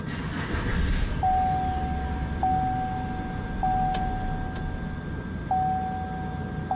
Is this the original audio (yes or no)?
yes